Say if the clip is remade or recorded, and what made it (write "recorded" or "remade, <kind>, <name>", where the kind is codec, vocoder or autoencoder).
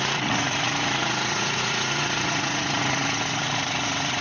remade, vocoder, Vocos